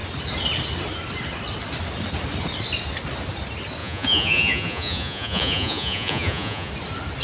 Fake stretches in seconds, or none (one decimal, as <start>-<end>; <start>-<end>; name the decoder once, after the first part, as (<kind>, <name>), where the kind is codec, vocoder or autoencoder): 3.8-6.7 (vocoder, Vocos)